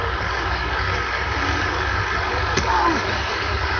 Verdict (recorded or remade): remade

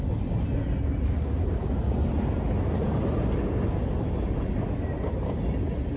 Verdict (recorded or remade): recorded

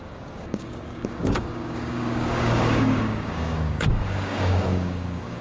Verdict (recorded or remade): remade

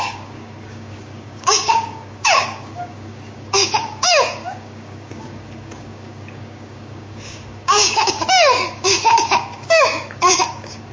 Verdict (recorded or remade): remade